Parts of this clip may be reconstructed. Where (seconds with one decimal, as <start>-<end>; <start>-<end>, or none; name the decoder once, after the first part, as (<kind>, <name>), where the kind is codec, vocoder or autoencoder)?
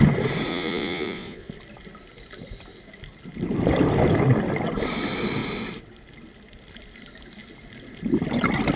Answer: 0.5-1.5 (vocoder, Vocos)